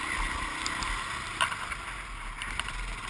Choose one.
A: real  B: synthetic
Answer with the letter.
A